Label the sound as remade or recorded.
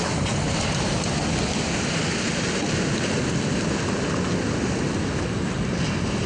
recorded